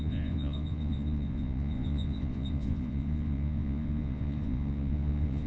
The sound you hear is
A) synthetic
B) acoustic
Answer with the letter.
A